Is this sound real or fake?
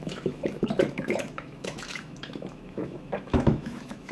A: fake